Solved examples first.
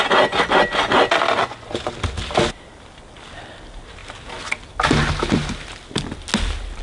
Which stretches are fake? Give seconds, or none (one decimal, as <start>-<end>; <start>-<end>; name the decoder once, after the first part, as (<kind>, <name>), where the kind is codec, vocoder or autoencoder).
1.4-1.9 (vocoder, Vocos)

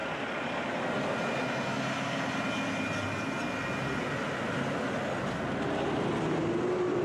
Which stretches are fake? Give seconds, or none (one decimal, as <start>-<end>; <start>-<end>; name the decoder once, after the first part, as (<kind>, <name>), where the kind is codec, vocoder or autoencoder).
none

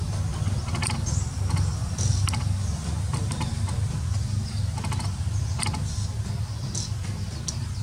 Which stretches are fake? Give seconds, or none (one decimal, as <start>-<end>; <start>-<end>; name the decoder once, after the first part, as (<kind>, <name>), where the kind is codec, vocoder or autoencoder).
none

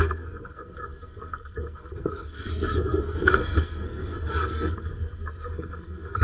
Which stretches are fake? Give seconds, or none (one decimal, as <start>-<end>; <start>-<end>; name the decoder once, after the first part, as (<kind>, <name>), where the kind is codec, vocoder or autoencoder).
0.0-6.2 (codec, SNAC)